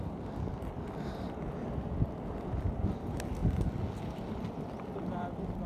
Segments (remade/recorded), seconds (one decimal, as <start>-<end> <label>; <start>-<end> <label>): 0.0-5.7 recorded